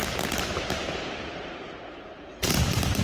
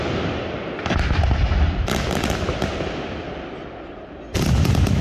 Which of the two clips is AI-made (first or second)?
first